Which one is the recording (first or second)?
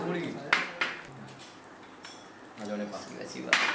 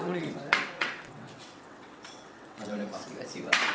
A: first